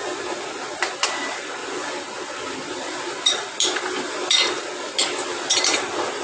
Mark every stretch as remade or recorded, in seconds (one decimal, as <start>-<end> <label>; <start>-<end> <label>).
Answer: 0.0-6.2 recorded